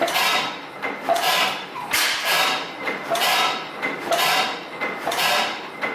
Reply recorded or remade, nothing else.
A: remade